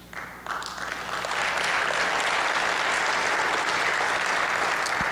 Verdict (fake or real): real